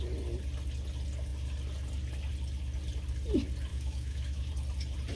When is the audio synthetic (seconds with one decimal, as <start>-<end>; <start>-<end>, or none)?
3.7-4.5